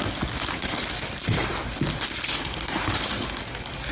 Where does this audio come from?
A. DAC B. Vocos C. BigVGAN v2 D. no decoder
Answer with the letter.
D